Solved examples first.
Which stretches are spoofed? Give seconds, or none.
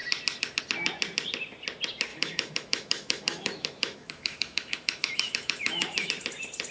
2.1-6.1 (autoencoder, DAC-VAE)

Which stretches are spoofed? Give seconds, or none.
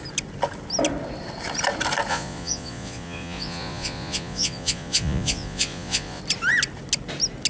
2.1-6.2 (vocoder, Vocos)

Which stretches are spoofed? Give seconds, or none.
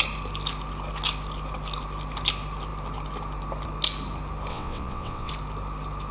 4.5-5.3 (vocoder, WaveNeXt)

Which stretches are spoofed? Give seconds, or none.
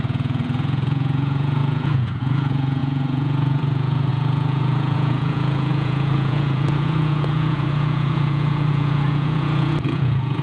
0.0-10.4 (vocoder, Vocos)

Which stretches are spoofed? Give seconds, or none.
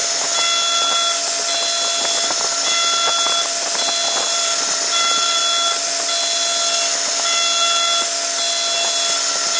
4.3-5.4 (vocoder, BigVGAN v2)